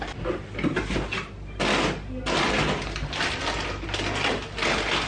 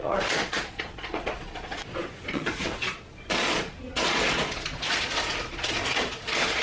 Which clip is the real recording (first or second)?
first